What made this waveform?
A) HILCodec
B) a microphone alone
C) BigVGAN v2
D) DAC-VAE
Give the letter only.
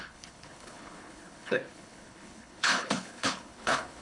A